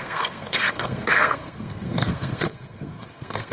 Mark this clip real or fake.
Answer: fake